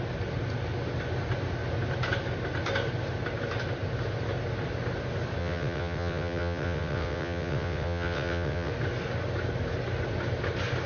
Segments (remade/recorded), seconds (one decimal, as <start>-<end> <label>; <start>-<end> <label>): 0.0-5.4 recorded; 5.4-8.7 remade; 8.7-10.9 recorded